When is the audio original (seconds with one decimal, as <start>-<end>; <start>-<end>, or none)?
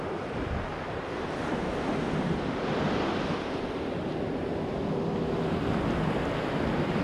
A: 0.0-0.7; 1.2-7.0